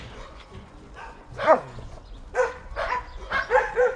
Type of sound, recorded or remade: remade